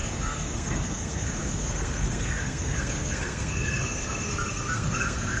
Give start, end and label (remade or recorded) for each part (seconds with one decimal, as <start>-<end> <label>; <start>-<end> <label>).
0.0-5.4 remade

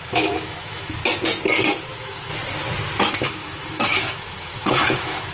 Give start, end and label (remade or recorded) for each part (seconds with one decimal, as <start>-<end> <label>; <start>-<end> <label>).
0.0-1.0 remade; 1.0-1.7 recorded; 1.7-2.3 remade; 2.3-3.0 recorded; 3.0-5.3 remade

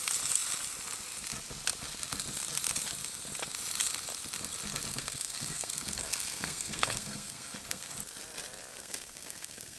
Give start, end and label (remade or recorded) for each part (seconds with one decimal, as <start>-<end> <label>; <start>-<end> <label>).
0.0-4.9 recorded; 4.9-7.9 remade; 7.9-8.7 recorded; 8.7-9.8 remade

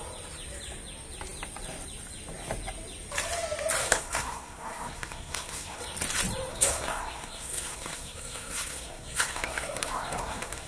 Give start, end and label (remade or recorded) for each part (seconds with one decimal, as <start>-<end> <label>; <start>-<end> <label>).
0.0-3.8 recorded; 3.8-5.8 remade; 5.8-6.5 recorded; 6.5-10.7 remade

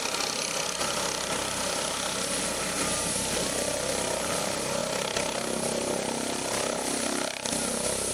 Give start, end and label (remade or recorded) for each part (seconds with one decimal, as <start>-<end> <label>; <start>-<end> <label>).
0.0-8.1 recorded

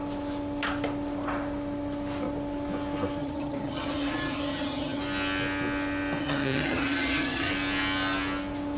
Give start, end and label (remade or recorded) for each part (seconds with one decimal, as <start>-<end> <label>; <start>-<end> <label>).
0.0-3.2 recorded; 3.2-5.0 remade; 5.0-6.2 recorded; 6.2-7.5 remade; 7.5-8.8 recorded

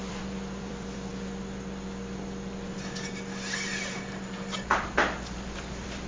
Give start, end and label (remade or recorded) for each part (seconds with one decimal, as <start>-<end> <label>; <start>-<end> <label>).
0.0-1.1 remade; 1.1-4.8 recorded; 4.8-6.1 remade

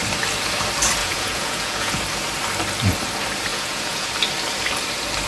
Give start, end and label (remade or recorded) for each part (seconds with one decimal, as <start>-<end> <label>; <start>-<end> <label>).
0.0-1.0 recorded; 1.0-2.0 remade; 2.0-3.5 recorded; 3.5-4.1 remade; 4.1-5.3 recorded